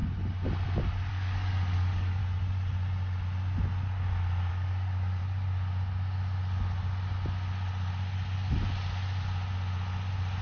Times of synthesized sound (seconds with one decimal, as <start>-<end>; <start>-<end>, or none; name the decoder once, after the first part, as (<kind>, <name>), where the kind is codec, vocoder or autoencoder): 1.1-2.2 (codec, DAC); 4.5-5.2